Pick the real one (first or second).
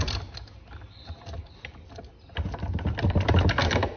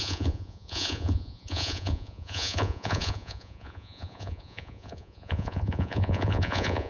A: first